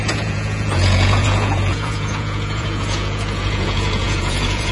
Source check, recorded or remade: remade